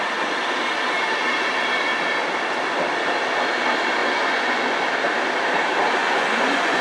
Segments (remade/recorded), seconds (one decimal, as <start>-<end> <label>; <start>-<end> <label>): 0.0-4.0 recorded; 4.0-4.8 remade; 4.8-6.0 recorded; 6.0-6.8 remade